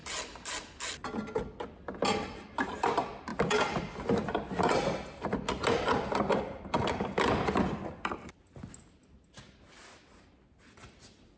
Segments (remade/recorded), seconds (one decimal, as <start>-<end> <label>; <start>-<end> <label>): 0.0-11.4 recorded